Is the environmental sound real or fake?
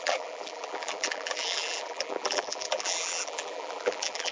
fake